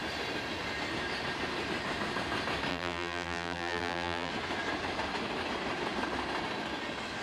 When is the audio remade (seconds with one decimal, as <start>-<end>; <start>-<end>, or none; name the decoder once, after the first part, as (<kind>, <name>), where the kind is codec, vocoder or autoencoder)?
2.7-4.3 (vocoder, BigVGAN v2)